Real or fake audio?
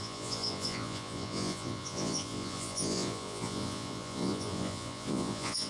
fake